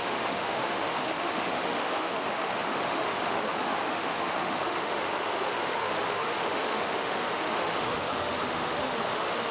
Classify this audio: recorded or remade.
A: remade